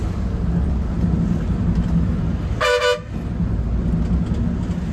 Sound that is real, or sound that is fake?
real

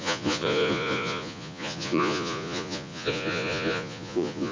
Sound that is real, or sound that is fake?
fake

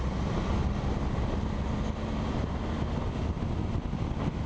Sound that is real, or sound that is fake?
real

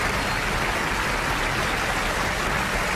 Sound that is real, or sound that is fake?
real